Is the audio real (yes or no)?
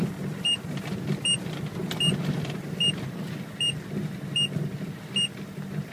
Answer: yes